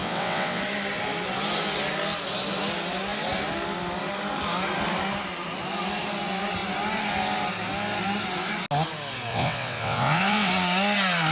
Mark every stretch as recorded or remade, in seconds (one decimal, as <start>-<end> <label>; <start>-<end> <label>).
0.0-0.6 remade; 0.6-9.3 recorded; 9.3-10.5 remade; 10.5-11.3 recorded